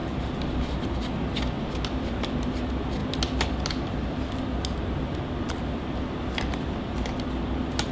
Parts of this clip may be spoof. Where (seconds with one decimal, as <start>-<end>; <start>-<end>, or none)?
none